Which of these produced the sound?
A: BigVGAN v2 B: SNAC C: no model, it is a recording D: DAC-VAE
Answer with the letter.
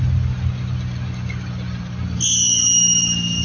C